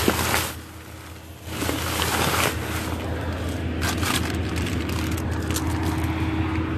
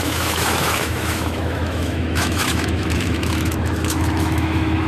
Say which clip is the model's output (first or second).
second